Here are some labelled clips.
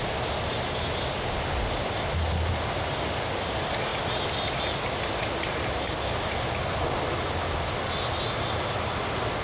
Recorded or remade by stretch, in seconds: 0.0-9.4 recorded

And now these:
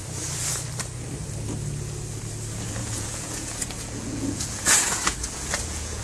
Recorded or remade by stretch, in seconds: 0.0-2.8 recorded; 2.8-6.0 remade

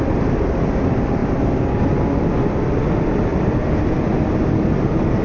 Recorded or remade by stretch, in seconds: 0.0-5.2 recorded

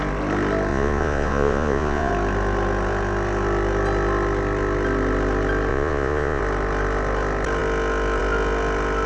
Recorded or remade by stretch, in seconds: 0.0-0.7 recorded; 0.7-2.1 remade; 2.1-5.7 recorded; 5.7-6.4 remade; 6.4-9.1 recorded

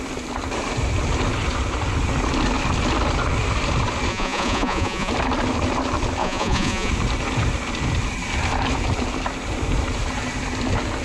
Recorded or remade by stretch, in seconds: 0.0-4.1 recorded; 4.1-5.1 remade; 5.1-6.2 recorded; 6.2-6.9 remade; 6.9-11.0 recorded

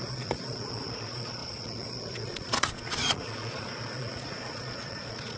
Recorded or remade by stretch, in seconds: 0.0-5.4 remade

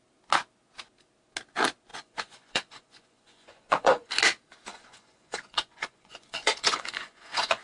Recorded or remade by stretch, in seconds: 0.0-1.9 recorded; 1.9-4.1 remade; 4.1-4.7 recorded; 4.7-7.6 remade